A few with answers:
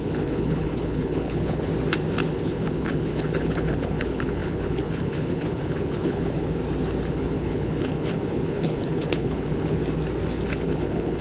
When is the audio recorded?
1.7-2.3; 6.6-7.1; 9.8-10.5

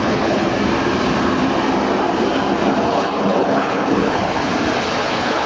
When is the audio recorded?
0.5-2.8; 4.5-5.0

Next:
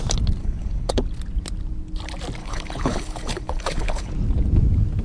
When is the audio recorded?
0.0-0.4; 1.0-2.4; 4.1-5.0

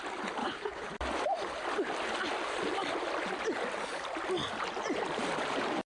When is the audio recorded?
0.0-0.4; 0.9-5.9

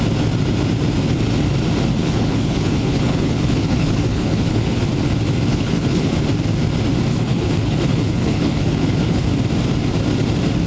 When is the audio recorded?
0.0-2.0; 4.9-5.5; 6.1-7.1; 9.3-10.7

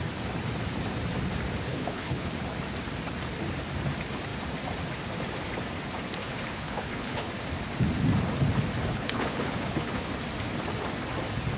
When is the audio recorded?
0.0-1.7; 2.3-6.2; 7.3-8.9; 10.1-11.6